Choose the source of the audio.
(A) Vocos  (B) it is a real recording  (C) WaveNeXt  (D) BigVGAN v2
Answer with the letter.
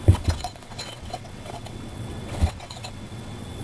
C